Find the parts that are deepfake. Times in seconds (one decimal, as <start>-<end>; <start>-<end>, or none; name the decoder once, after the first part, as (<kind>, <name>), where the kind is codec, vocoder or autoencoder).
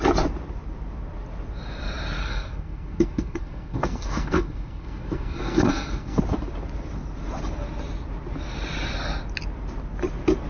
2.2-6.2 (codec, SNAC)